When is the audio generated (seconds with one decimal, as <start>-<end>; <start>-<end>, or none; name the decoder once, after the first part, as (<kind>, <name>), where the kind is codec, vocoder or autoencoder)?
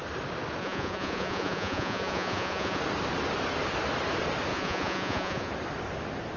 0.6-2.8 (vocoder, Vocos); 4.5-5.5